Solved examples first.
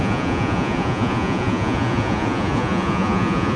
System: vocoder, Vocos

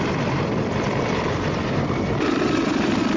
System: none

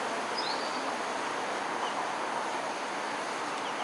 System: none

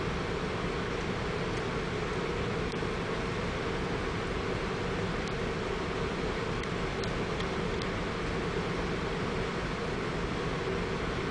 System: none